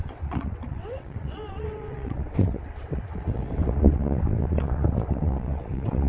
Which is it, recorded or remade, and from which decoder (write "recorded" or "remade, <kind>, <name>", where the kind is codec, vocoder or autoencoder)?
remade, vocoder, WaveNeXt